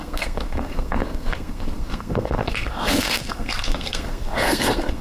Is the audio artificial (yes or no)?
yes